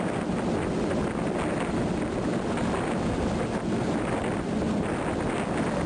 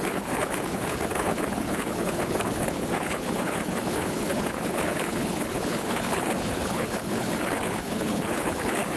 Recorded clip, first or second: first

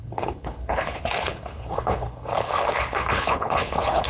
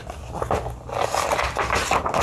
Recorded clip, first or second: second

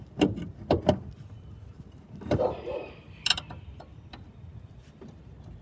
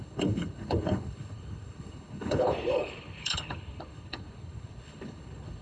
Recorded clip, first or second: first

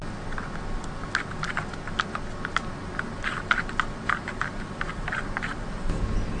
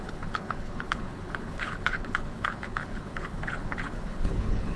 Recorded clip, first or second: first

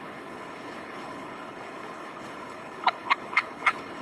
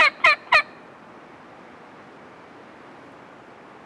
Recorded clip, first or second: second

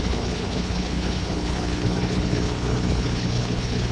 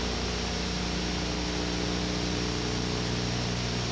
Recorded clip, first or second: second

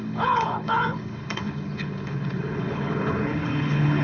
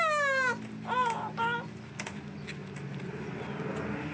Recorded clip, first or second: second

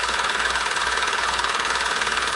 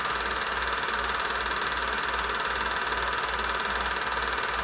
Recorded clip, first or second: second